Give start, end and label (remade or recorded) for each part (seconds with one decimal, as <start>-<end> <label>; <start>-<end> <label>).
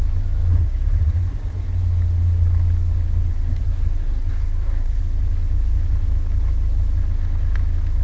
0.0-0.5 recorded; 0.5-1.1 remade; 1.1-3.3 recorded; 3.3-5.0 remade; 5.0-8.0 recorded